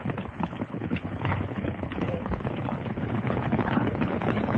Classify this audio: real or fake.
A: fake